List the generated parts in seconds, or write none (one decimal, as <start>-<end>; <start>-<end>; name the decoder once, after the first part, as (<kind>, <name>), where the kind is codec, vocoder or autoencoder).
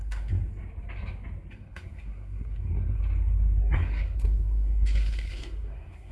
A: 0.0-0.4 (codec, SNAC); 1.5-3.0; 3.6-6.1